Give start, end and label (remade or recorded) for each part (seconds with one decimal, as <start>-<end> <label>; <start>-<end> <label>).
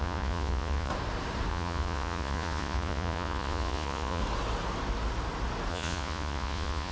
0.0-0.9 remade; 0.9-1.5 recorded; 1.5-4.2 remade; 4.2-5.7 recorded; 5.7-6.9 remade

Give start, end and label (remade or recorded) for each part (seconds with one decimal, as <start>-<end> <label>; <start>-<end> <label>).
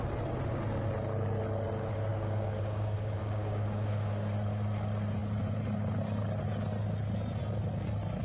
0.0-2.1 recorded; 2.1-4.1 remade; 4.1-8.2 recorded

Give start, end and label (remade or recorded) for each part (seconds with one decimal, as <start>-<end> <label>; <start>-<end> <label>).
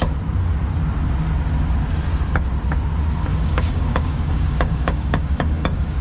0.0-3.3 recorded; 3.3-6.0 remade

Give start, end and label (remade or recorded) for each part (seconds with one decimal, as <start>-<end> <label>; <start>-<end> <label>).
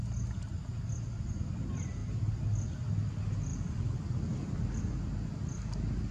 0.0-2.0 recorded; 2.0-2.7 remade; 2.7-3.5 recorded; 3.5-4.8 remade; 4.8-6.1 recorded